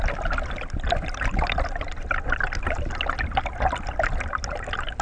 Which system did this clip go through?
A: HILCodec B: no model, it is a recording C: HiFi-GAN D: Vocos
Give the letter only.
B